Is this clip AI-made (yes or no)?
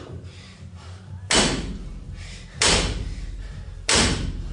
yes